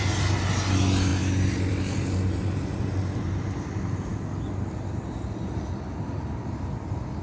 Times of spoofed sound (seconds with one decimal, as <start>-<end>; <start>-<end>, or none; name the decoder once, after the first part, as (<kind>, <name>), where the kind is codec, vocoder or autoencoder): none

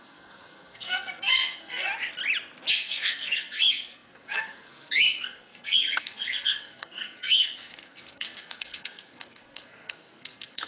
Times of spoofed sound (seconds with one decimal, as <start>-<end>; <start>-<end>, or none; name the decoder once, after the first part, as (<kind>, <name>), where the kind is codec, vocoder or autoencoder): 0.0-1.9 (codec, SNAC); 2.7-10.7

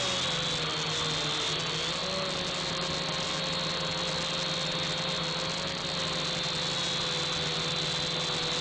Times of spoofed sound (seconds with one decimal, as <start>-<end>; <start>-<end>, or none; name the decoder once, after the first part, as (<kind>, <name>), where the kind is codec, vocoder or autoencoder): none

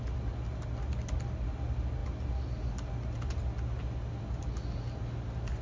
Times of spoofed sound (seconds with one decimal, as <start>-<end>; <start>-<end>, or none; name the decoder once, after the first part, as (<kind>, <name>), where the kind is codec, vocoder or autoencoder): none